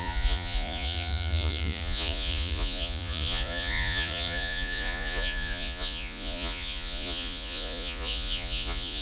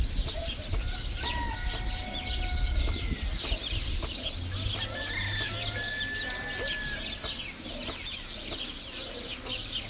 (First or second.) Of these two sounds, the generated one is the first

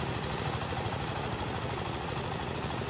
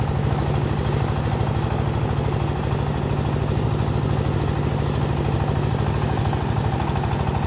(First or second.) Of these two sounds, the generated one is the first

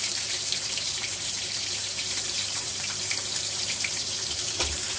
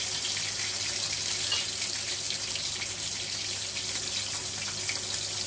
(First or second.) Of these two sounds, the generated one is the first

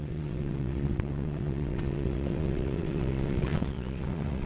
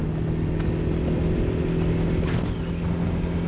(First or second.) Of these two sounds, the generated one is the first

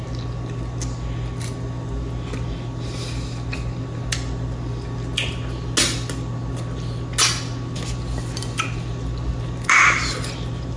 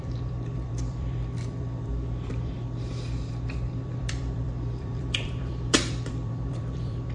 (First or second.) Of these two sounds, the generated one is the second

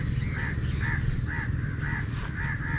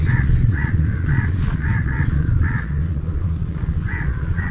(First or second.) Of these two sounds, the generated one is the second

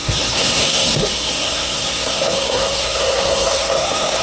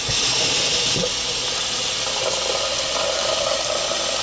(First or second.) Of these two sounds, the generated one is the first